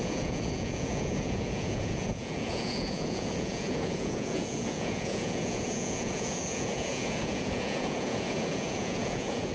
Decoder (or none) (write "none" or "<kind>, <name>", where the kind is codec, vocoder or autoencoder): vocoder, Vocos